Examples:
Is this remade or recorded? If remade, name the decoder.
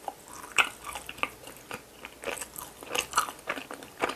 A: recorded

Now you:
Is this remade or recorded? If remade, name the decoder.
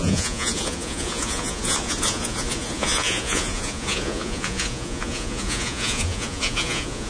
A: remade, vocoder, Vocos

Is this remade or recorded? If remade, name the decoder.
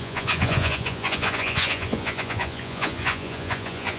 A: remade, vocoder, Vocos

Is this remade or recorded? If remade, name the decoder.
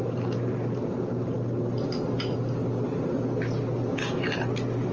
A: recorded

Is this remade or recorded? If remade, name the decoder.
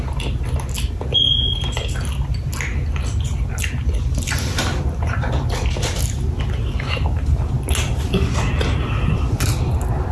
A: recorded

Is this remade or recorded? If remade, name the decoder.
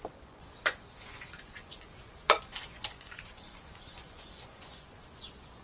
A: remade, vocoder, Vocos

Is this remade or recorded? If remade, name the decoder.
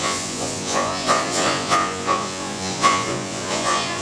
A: remade, vocoder, Vocos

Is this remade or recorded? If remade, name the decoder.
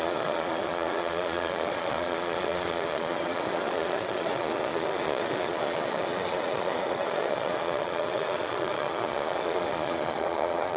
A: remade, vocoder, Vocos